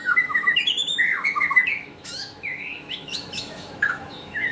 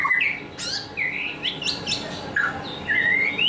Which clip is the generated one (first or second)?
first